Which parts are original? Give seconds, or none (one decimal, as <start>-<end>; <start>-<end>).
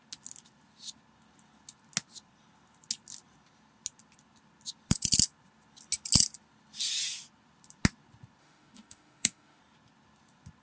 0.0-8.4; 9.6-10.6